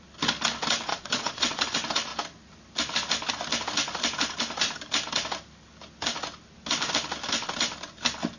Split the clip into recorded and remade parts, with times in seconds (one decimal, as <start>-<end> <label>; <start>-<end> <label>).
0.0-0.9 recorded; 0.9-1.6 remade; 1.6-8.4 recorded